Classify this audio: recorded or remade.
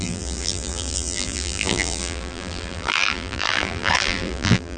remade